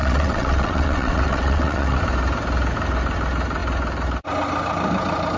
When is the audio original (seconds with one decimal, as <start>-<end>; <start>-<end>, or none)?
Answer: 2.0-5.4